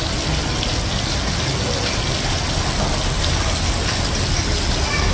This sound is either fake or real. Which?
real